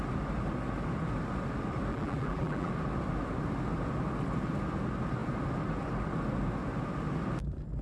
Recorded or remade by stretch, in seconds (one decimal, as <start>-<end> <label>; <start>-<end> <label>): 0.0-1.9 recorded; 1.9-2.7 remade; 2.7-7.8 recorded